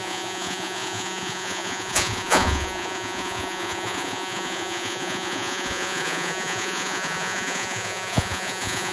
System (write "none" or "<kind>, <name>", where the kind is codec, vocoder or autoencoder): vocoder, Vocos